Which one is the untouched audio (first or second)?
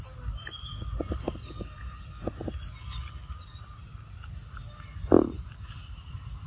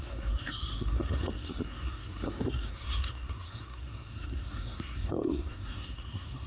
first